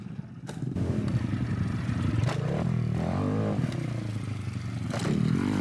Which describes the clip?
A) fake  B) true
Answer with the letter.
B